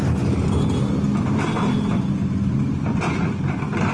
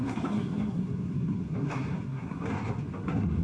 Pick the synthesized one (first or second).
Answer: second